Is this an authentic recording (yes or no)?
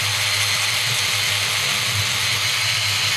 yes